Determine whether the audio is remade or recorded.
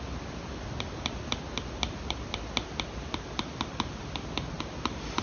recorded